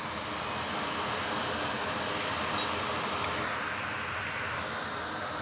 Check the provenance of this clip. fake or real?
real